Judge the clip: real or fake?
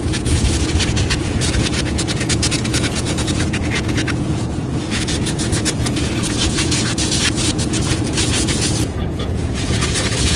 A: fake